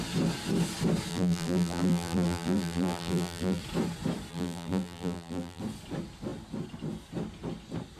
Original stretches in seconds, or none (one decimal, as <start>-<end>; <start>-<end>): 0.0-1.1; 3.6-4.3; 5.6-8.0